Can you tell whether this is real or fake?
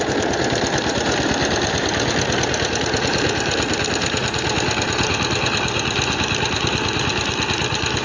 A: real